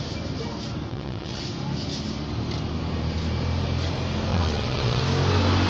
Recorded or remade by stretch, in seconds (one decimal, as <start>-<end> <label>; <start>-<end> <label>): 0.0-0.9 recorded; 0.9-1.4 remade; 1.4-4.3 recorded; 4.3-5.0 remade; 5.0-5.7 recorded

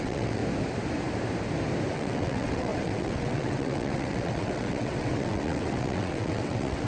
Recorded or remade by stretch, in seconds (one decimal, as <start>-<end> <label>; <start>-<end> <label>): 0.0-0.4 remade; 0.4-1.9 recorded; 1.9-6.9 remade